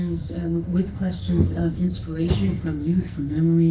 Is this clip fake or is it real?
fake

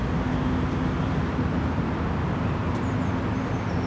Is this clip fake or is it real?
real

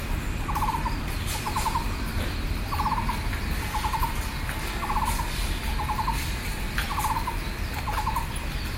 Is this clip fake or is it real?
real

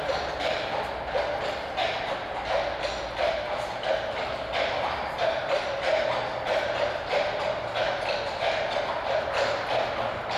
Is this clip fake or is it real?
real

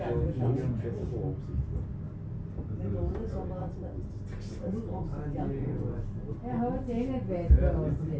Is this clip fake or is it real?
real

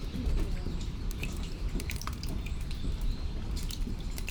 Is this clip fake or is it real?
fake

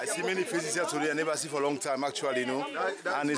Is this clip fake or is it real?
real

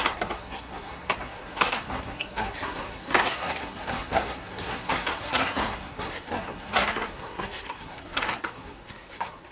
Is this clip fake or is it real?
fake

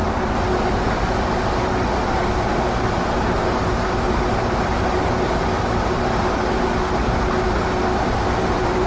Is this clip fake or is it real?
real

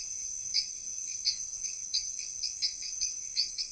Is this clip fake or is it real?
fake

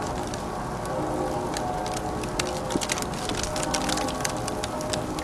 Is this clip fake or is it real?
real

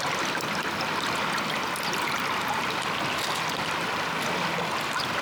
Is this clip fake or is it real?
real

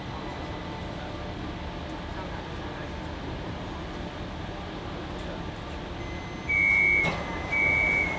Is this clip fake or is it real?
real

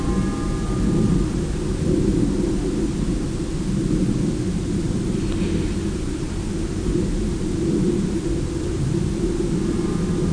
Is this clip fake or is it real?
real